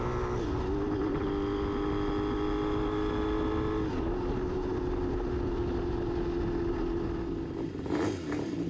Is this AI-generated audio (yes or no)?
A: no